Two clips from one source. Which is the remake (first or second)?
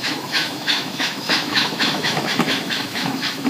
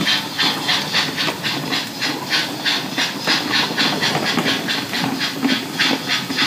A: first